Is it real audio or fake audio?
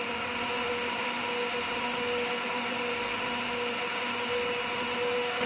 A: real